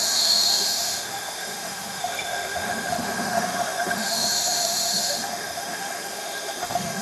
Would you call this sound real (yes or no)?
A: no